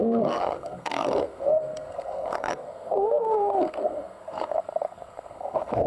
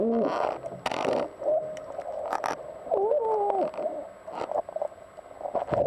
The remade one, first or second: first